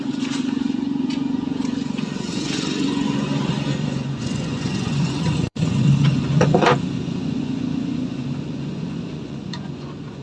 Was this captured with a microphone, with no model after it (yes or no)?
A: no